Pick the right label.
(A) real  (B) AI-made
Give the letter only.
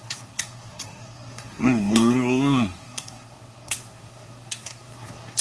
B